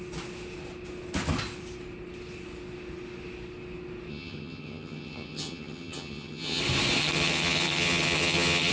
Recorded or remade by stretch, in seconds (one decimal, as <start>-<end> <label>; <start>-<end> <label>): 0.0-4.1 recorded; 4.1-6.6 remade; 6.6-7.0 recorded; 7.0-8.7 remade

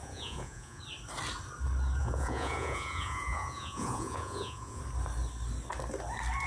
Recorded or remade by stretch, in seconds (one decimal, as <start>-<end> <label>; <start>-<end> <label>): 0.0-0.8 remade; 0.8-2.0 recorded; 2.0-4.8 remade; 4.8-6.5 recorded